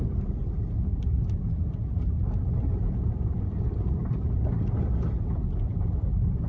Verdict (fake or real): real